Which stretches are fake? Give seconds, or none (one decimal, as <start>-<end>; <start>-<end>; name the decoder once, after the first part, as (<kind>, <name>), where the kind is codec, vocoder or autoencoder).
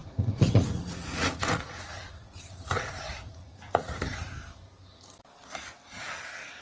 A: 0.0-4.0 (vocoder, Vocos)